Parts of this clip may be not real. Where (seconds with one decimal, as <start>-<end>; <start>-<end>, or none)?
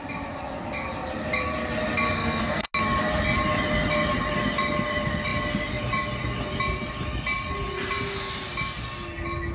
2.2-2.7